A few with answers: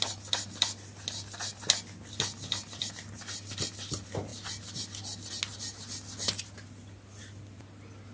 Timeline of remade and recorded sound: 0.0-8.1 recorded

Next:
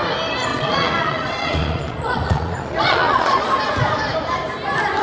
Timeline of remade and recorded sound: 0.0-0.5 recorded; 0.5-3.5 remade; 3.5-5.0 recorded

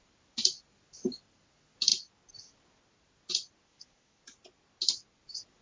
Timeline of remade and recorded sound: 0.0-5.6 recorded

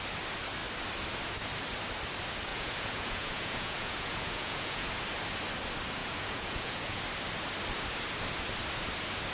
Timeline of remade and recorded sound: 0.0-2.5 recorded; 2.5-4.9 remade; 4.9-6.0 recorded; 6.0-7.0 remade; 7.0-9.3 recorded